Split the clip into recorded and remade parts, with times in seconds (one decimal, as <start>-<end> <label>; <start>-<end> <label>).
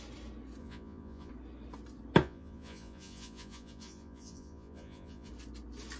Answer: 0.0-0.6 recorded; 0.6-1.3 remade; 1.3-2.2 recorded; 2.2-5.3 remade; 5.3-6.0 recorded